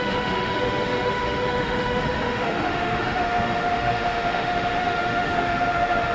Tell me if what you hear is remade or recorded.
remade